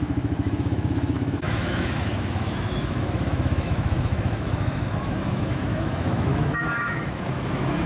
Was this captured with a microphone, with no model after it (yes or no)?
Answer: no